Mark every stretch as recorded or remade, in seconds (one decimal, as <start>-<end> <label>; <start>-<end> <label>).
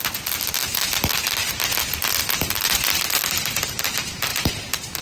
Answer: 0.0-0.6 recorded; 0.6-1.5 remade; 1.5-2.2 recorded; 2.2-3.8 remade; 3.8-4.3 recorded; 4.3-5.0 remade